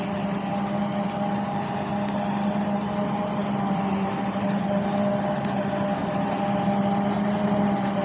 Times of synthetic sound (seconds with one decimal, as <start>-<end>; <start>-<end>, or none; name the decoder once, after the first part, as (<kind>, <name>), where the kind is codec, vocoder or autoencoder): none